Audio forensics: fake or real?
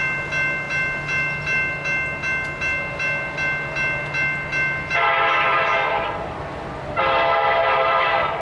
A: real